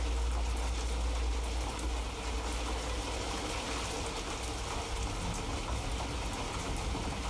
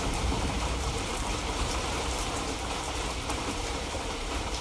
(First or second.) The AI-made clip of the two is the second